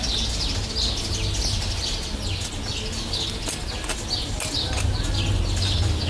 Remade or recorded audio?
recorded